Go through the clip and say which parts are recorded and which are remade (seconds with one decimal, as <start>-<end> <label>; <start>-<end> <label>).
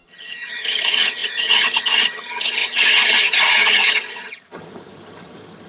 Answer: 0.0-5.7 remade